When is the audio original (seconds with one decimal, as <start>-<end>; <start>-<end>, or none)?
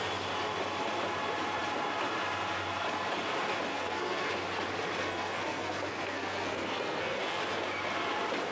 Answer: 0.0-3.7; 4.3-5.0; 7.4-8.5